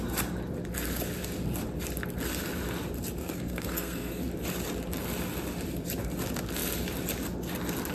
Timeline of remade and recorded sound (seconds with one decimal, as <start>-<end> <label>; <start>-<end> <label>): 0.0-3.2 recorded; 3.2-4.2 remade; 4.2-7.9 recorded

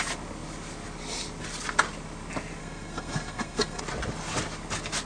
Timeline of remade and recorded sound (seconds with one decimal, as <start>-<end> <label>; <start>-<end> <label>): 0.0-2.6 recorded; 2.6-3.8 remade; 3.8-5.1 recorded

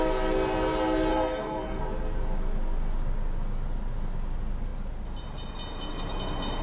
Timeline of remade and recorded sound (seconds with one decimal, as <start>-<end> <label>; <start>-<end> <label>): 0.0-1.1 recorded; 1.1-1.8 remade; 1.8-6.6 recorded

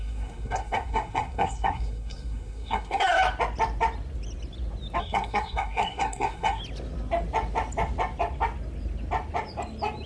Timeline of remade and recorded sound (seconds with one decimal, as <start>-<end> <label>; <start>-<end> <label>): 0.0-3.2 remade; 3.2-5.0 recorded; 5.0-6.6 remade; 6.6-10.1 recorded

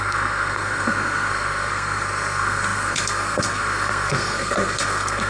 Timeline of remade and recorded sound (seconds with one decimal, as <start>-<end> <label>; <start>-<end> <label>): 0.0-5.3 remade